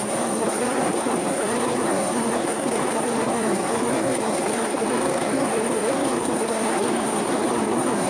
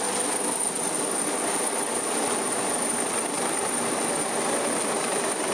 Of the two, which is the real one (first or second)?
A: second